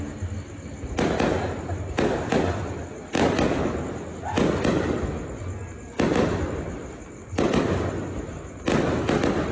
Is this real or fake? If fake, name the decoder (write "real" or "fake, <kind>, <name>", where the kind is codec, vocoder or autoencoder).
real